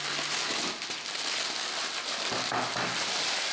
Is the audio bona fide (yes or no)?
yes